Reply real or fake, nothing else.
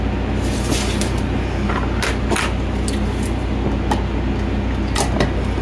real